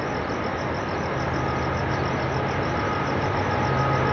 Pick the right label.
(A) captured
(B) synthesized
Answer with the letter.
A